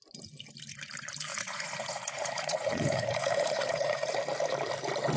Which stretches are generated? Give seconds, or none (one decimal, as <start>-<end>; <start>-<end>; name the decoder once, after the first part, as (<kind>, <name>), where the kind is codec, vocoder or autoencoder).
1.3-4.2 (vocoder, Vocos)